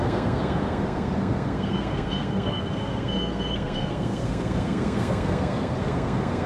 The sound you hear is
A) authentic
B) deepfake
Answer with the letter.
B